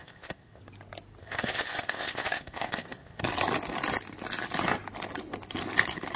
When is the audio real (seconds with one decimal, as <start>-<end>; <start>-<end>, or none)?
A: 0.6-1.2; 3.2-6.2